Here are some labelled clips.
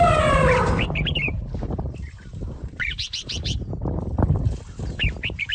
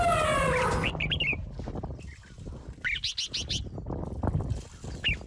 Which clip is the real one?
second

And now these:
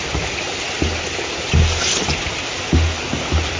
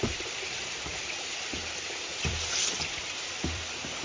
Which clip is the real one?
first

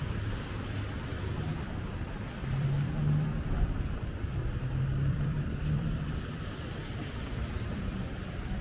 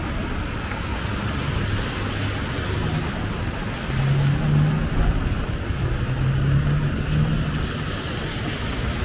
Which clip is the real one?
second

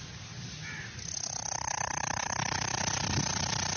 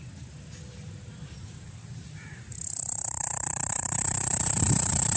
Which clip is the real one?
first